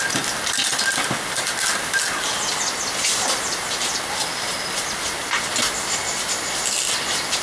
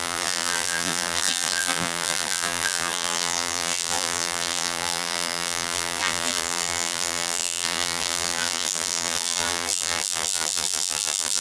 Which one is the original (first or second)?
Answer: first